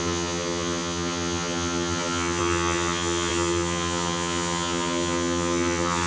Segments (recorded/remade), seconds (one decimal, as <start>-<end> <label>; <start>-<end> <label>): 0.0-6.1 remade